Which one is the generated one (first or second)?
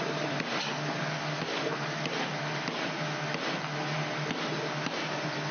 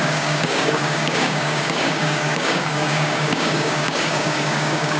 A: second